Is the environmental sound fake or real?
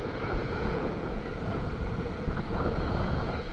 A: fake